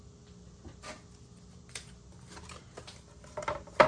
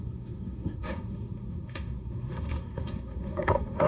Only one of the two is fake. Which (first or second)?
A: second